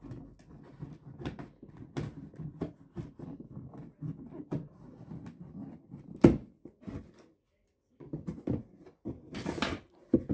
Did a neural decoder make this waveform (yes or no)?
no